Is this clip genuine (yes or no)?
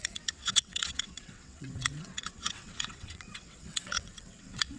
no